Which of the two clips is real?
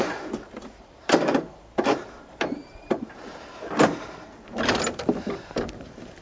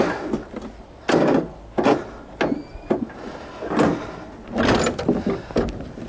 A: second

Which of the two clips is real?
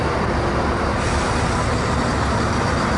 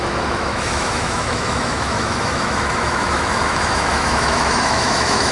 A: first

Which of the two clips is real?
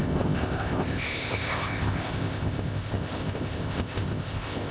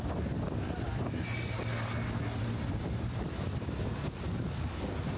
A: second